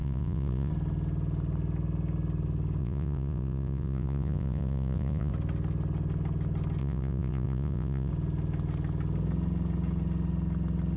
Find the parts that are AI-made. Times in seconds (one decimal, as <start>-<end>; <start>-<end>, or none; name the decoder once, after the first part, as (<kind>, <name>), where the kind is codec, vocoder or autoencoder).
0.0-0.7 (vocoder, Vocos); 2.8-5.3; 6.8-8.1